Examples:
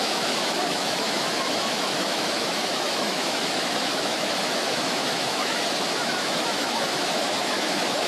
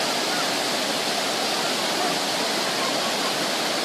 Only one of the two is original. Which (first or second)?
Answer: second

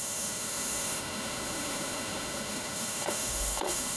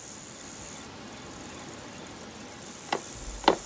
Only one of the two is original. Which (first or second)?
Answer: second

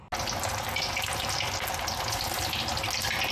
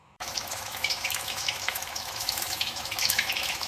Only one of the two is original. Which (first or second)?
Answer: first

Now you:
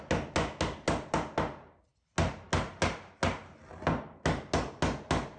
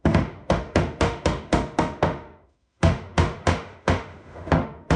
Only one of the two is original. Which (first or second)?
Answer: first